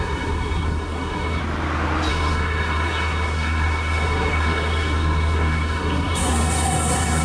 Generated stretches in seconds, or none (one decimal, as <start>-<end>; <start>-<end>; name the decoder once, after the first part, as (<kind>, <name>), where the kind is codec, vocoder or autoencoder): 0.0-1.4 (codec, SNAC); 2.1-7.2